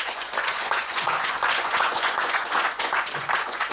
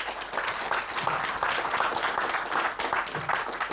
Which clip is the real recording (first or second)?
second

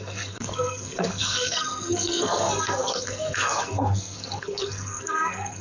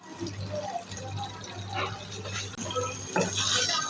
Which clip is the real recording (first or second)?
second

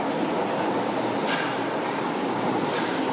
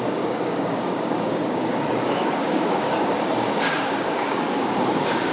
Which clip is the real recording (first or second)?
first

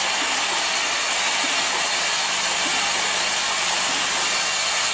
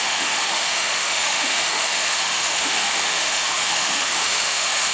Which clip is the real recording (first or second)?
first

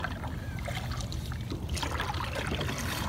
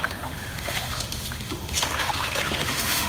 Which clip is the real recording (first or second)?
first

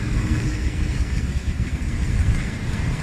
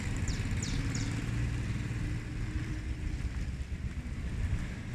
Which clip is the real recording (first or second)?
second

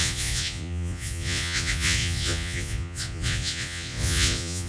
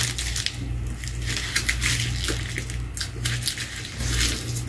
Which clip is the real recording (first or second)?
second